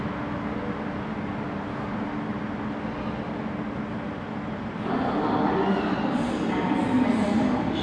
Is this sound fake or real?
real